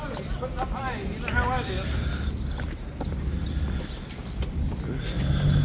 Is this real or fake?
real